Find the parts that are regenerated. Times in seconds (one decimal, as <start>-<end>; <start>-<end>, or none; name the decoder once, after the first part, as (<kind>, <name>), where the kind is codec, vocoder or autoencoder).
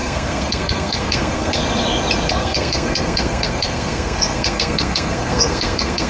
0.0-1.6 (codec, SNAC); 2.3-6.1